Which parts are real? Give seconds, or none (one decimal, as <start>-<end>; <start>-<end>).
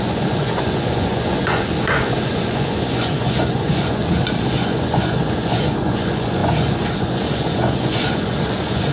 4.0-4.5